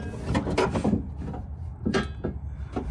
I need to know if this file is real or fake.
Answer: real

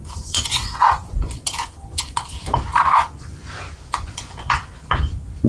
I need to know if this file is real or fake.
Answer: fake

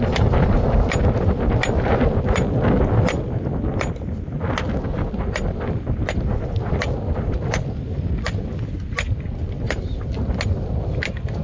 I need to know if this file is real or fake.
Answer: real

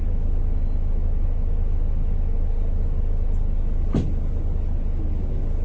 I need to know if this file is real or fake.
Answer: real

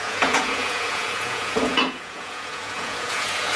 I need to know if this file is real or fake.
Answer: fake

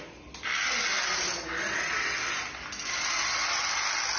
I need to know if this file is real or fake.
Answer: real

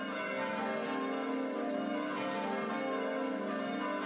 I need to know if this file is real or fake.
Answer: real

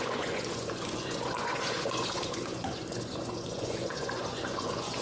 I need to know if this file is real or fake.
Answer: fake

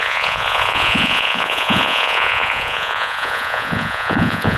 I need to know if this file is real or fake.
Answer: fake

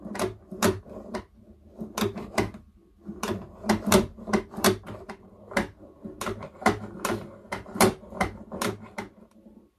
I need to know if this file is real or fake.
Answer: real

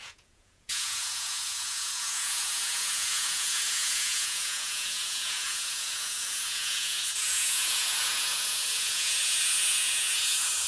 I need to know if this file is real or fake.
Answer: fake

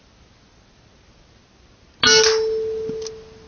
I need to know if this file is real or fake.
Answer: real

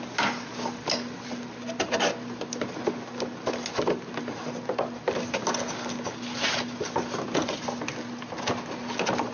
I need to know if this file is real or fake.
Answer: real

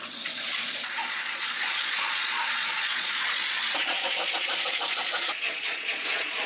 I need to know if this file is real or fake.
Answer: fake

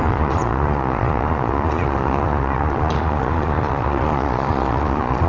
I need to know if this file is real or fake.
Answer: fake